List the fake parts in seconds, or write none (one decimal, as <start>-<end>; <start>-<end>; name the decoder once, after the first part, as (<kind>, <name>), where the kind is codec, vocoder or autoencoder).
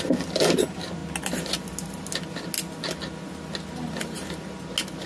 none